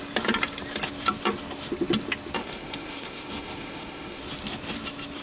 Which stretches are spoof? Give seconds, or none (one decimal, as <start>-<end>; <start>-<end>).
2.4-4.2